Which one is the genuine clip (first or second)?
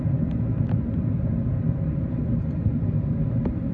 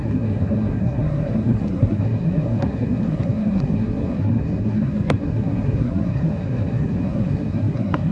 first